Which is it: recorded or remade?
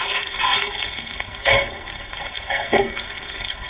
remade